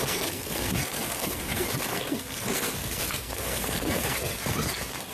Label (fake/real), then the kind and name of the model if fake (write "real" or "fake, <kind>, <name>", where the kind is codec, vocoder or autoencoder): fake, codec, SNAC